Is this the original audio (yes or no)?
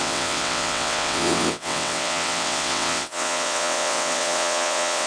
no